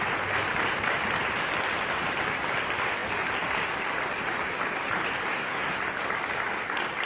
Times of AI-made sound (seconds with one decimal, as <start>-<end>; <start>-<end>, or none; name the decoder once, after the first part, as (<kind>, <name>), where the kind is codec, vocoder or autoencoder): 5.3-5.8 (codec, SNAC)